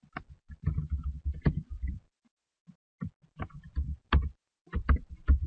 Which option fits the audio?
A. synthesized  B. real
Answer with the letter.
B